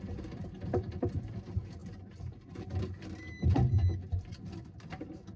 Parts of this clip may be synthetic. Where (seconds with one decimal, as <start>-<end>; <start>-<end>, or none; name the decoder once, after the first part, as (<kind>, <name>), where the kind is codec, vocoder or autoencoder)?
0.0-5.4 (vocoder, BigVGAN v2)